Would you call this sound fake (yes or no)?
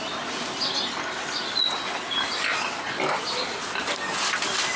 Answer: no